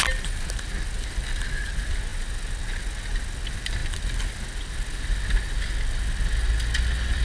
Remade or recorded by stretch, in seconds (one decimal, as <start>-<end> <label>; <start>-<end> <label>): 0.0-7.2 recorded